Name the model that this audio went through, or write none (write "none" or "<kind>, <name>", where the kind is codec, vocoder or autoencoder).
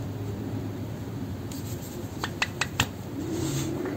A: none